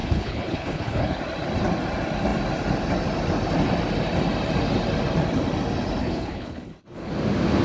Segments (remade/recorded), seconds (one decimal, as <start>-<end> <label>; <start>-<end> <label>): 0.0-1.2 remade; 1.2-6.0 recorded; 6.0-7.1 remade; 7.1-7.6 recorded